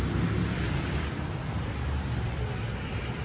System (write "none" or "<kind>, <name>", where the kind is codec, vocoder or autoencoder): none